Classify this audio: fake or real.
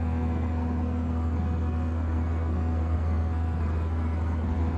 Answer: fake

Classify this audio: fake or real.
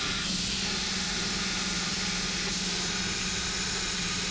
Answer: real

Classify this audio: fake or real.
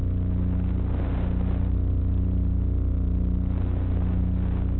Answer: real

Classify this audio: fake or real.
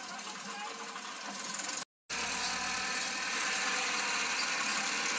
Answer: real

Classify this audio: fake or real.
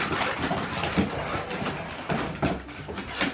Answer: real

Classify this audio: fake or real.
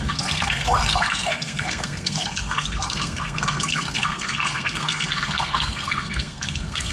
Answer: fake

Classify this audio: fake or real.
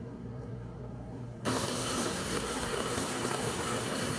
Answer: fake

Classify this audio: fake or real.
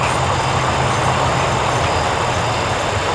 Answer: real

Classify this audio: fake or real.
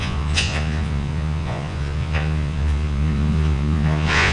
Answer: fake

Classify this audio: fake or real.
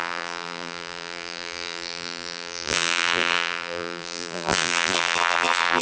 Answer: fake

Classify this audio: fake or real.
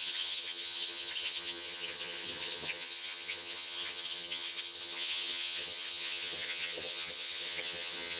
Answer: fake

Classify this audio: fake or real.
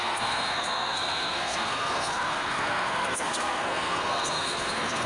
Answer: fake